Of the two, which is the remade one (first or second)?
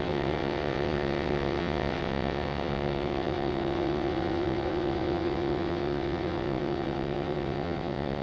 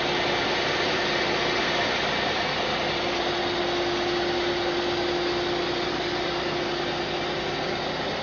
first